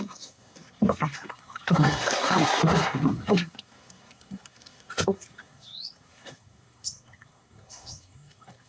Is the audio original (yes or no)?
no